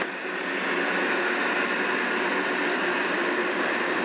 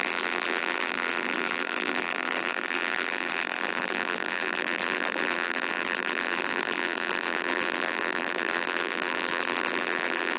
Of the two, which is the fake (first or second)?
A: second